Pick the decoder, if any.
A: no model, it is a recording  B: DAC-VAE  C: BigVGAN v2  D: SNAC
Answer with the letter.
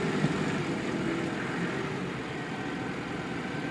A